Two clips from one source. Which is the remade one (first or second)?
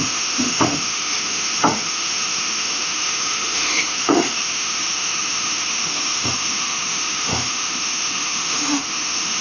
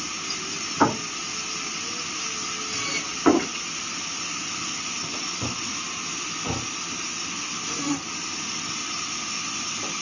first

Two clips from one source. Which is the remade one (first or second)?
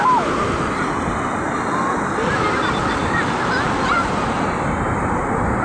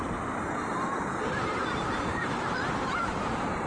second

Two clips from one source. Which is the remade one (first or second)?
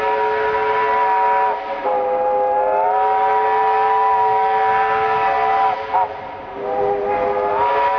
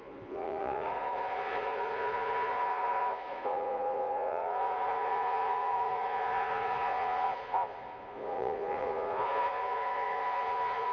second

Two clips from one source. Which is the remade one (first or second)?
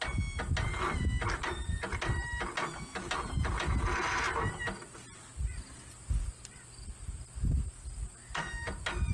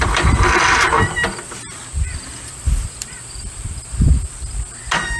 second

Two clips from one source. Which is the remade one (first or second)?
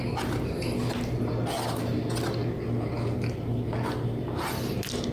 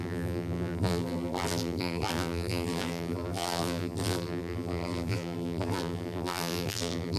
second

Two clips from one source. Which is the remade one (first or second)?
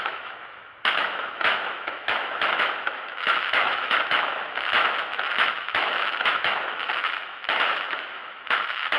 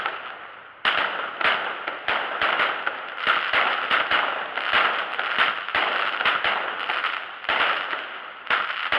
first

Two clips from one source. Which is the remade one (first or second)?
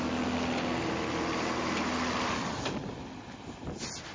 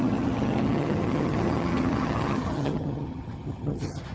second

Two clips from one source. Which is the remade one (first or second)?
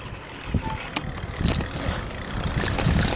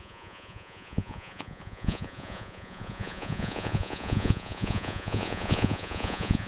second